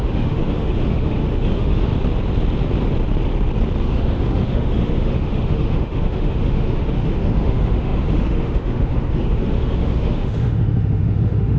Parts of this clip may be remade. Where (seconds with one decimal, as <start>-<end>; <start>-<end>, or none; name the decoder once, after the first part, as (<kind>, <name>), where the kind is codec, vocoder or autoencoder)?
0.0-1.9 (autoencoder, DAC-VAE); 3.8-11.6